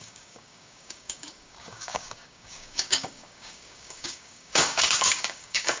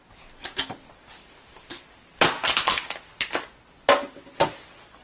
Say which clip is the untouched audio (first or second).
second